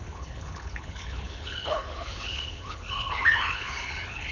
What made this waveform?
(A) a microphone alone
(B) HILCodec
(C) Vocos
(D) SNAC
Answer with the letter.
B